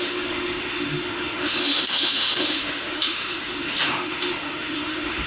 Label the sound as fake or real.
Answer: fake